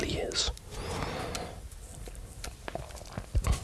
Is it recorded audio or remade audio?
recorded